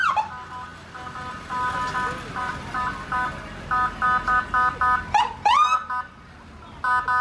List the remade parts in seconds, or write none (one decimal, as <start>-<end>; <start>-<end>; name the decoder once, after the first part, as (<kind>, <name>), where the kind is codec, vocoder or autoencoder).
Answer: none